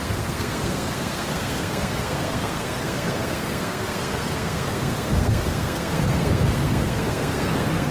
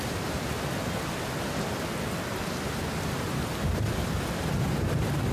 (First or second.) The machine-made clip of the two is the first